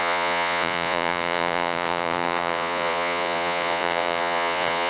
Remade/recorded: remade